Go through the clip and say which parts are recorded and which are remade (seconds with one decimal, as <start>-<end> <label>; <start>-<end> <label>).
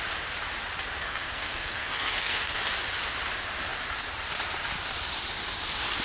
0.0-1.0 recorded; 1.0-2.6 remade; 2.6-6.0 recorded